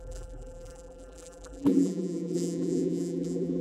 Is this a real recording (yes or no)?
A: no